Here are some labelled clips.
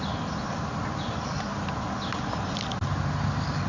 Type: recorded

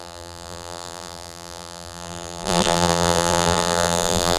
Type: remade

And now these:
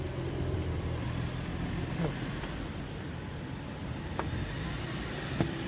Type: remade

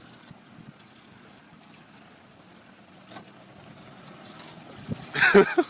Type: remade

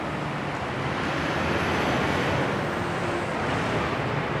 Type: recorded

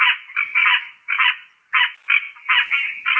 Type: recorded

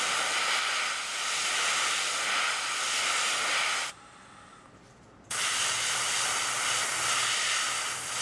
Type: recorded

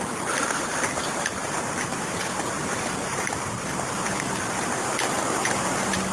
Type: remade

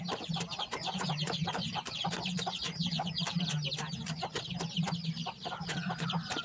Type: remade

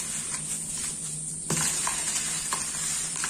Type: recorded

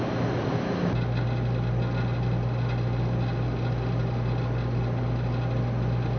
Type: recorded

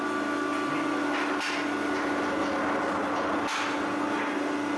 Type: recorded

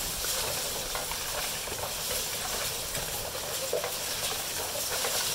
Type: recorded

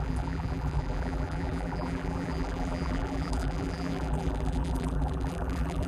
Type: remade